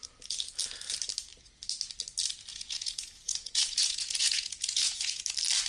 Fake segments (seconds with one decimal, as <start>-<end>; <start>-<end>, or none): 2.5-5.2